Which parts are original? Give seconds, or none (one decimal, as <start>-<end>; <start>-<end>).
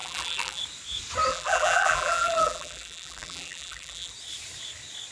0.6-1.3; 4.1-5.1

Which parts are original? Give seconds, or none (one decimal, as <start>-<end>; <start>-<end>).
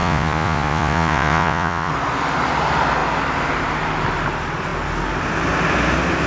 1.9-6.3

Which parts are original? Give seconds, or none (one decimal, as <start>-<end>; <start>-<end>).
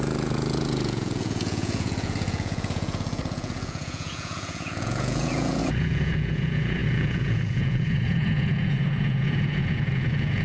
none